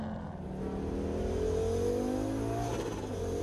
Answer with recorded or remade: recorded